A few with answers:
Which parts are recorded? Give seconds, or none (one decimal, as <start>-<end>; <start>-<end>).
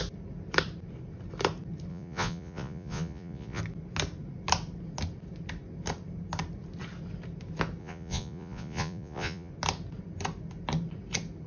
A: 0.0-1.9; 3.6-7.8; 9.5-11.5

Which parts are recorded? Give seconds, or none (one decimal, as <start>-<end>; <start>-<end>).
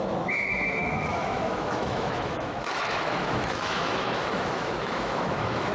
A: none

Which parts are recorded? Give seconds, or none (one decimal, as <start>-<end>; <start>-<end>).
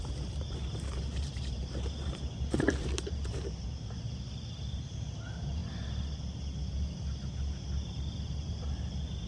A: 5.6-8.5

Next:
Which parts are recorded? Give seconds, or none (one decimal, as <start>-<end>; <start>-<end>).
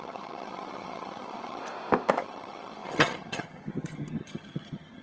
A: 1.6-2.2